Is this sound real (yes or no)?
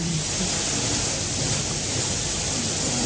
yes